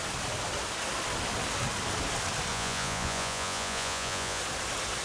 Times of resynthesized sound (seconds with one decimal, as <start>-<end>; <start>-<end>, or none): 2.5-4.4